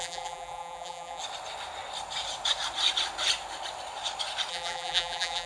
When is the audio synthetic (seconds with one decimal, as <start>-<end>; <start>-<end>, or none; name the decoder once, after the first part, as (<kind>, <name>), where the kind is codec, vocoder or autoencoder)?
0.0-1.2 (vocoder, BigVGAN v2); 4.5-5.5